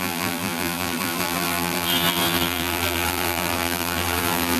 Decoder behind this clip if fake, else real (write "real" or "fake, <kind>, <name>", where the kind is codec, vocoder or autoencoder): fake, vocoder, BigVGAN v2